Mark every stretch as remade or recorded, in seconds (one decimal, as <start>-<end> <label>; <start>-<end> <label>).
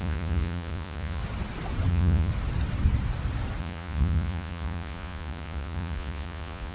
0.0-1.2 remade; 1.2-1.9 recorded; 1.9-2.3 remade; 2.3-3.6 recorded; 3.6-6.7 remade